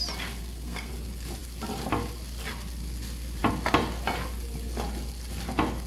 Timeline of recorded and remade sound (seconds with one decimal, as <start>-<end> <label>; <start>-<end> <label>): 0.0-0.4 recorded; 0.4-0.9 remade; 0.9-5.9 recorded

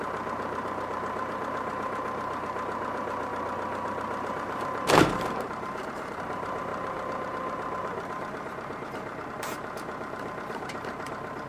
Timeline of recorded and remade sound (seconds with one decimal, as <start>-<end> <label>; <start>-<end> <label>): 0.0-11.5 remade

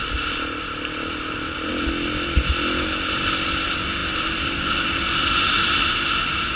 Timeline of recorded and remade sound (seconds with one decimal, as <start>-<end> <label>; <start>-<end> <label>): 0.0-6.6 recorded

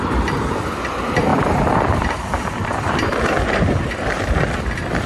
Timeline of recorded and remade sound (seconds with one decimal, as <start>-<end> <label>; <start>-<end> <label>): 0.0-1.3 recorded; 1.3-4.4 remade; 4.4-5.1 recorded